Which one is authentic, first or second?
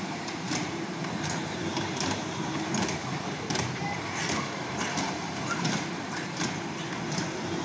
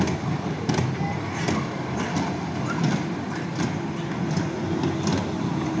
second